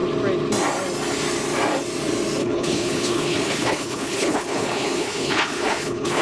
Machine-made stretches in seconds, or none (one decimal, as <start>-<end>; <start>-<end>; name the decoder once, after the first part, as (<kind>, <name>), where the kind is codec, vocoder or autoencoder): 2.4-6.2 (codec, HILCodec)